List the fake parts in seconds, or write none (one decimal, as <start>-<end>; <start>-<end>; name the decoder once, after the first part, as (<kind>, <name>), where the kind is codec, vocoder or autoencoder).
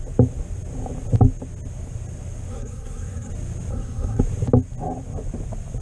2.5-3.3 (codec, SNAC); 3.7-4.2